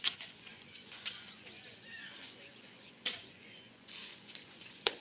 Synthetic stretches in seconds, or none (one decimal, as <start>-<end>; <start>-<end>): 0.0-5.0